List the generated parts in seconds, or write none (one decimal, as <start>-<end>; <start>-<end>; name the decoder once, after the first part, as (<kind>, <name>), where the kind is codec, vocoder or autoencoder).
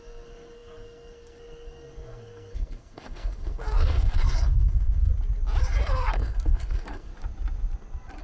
0.0-5.1 (codec, SNAC); 5.9-7.1